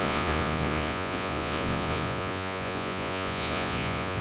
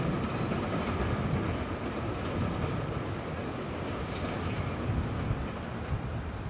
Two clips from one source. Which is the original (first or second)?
second